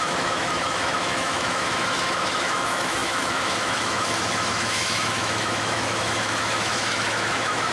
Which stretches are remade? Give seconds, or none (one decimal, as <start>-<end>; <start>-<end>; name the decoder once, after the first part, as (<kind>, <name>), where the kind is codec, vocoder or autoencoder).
0.0-7.7 (autoencoder, DAC-VAE)